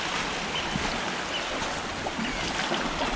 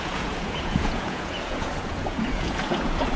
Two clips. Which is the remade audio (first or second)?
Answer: second